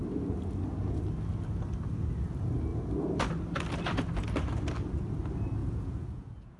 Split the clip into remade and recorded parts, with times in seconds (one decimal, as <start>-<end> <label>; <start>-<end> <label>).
0.0-5.6 recorded; 5.6-6.6 remade